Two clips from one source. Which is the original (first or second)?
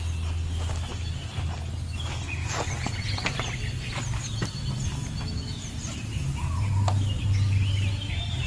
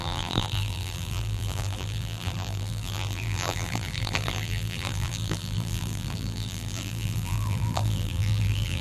first